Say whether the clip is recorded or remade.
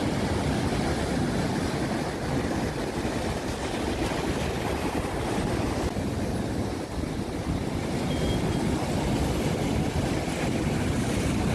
recorded